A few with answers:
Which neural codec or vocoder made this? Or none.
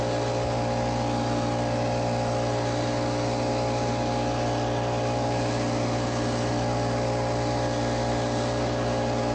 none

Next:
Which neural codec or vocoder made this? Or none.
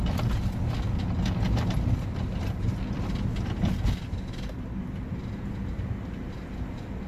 none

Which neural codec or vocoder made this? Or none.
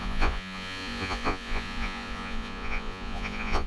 vocoder, Vocos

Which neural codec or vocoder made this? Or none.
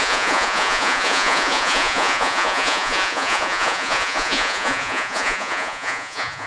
vocoder, Vocos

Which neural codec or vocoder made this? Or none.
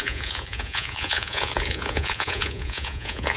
vocoder, Vocos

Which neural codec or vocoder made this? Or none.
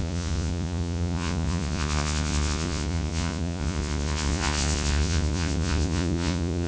vocoder, Vocos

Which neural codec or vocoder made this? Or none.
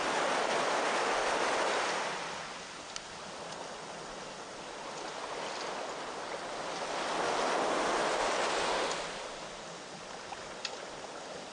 none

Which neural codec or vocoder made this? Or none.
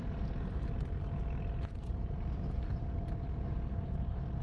none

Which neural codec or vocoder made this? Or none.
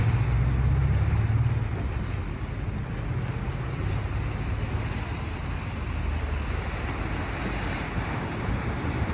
none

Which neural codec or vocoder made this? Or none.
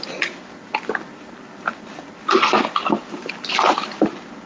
none